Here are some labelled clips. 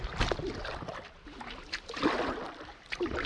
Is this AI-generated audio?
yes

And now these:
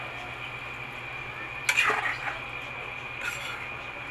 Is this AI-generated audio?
no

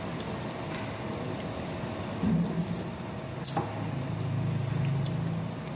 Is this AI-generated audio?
no